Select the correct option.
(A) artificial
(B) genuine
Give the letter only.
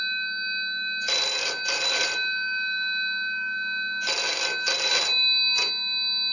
B